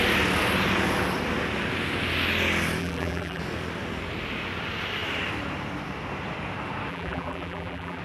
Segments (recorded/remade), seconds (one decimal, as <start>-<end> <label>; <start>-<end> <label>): 0.0-2.8 recorded; 2.8-3.4 remade; 3.4-6.9 recorded; 6.9-8.0 remade